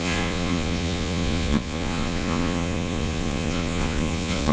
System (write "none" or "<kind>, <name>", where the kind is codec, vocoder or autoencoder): vocoder, Vocos